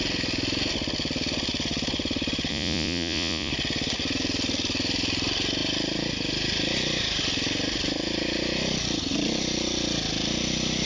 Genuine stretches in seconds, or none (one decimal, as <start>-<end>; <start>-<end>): 0.0-2.5; 3.5-10.9